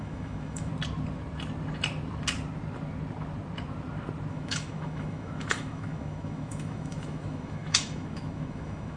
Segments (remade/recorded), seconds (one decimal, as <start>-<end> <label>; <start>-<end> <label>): 0.0-0.7 remade; 0.7-4.3 recorded; 4.3-9.0 remade